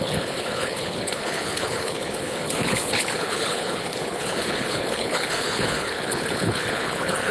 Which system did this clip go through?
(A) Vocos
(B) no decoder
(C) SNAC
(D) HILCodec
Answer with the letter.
D